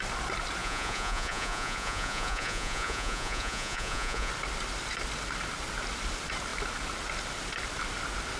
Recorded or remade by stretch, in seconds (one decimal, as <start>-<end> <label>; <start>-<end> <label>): 0.0-0.6 recorded; 0.6-4.3 remade; 4.3-8.4 recorded

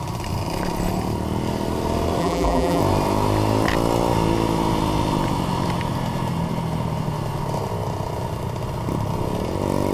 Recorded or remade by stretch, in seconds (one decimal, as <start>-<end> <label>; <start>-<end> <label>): 0.0-2.2 recorded; 2.2-2.8 remade; 2.8-9.9 recorded

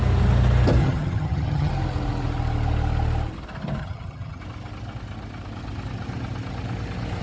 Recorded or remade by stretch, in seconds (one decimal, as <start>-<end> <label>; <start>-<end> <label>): 0.0-0.8 recorded; 0.8-1.7 remade; 1.7-3.8 recorded; 3.8-4.4 remade; 4.4-7.2 recorded